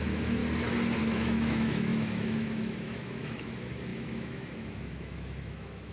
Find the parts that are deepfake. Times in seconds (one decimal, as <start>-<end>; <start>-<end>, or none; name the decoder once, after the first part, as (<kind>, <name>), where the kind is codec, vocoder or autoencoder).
0.0-0.4 (autoencoder, DAC-VAE); 1.0-5.9